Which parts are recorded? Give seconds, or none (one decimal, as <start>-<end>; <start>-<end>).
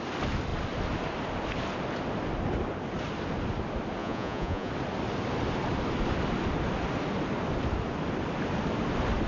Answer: 0.0-4.0; 4.7-9.3